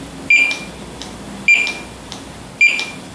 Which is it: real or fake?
real